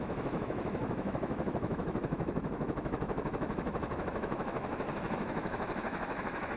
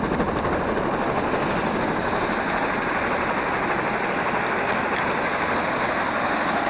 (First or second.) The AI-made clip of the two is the first